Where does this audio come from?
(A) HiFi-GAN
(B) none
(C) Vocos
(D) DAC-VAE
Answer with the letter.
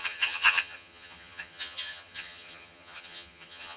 A